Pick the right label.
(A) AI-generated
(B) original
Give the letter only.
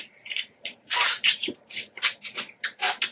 A